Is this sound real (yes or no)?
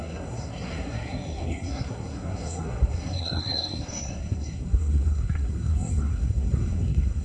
no